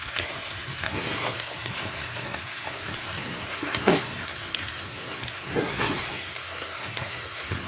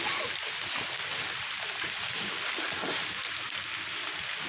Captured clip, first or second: second